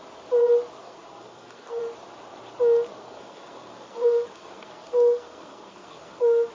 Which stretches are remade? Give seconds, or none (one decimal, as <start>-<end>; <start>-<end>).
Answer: 0.8-1.8; 2.9-6.5